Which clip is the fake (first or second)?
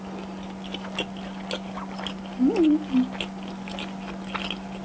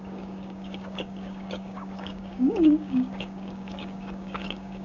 second